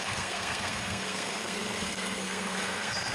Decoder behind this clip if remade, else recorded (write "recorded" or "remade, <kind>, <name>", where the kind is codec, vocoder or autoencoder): remade, codec, SNAC